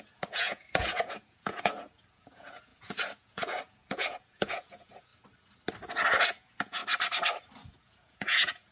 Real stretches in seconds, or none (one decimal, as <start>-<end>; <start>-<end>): 5.1-6.2; 6.8-7.7

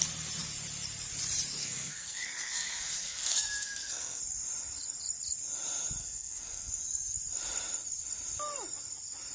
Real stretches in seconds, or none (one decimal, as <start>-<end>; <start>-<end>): 0.0-1.6; 4.2-6.0; 6.7-9.3

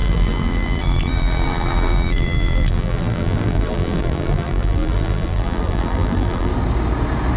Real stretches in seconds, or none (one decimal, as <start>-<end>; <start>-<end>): 6.5-7.4

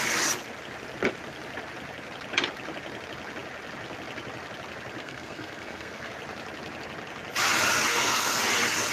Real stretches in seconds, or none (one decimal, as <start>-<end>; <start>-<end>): 0.0-5.0; 6.1-7.9; 8.4-8.9

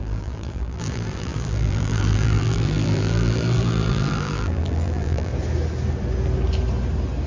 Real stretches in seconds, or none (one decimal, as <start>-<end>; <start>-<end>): 5.3-7.3

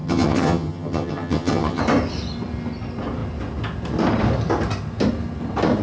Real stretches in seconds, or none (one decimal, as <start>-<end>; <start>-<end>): 1.8-5.8

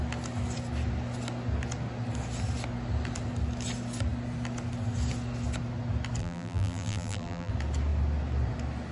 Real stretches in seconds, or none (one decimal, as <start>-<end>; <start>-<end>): 0.0-6.2; 7.5-8.9